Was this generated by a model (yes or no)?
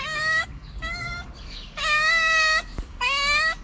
yes